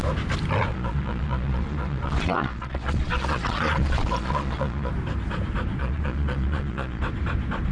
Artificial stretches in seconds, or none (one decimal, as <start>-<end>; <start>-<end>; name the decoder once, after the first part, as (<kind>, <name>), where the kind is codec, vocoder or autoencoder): 0.7-4.9 (vocoder, Vocos); 5.8-7.0